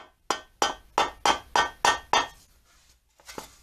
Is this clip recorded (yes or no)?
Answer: yes